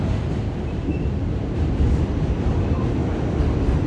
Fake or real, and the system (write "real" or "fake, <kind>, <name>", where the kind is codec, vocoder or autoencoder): real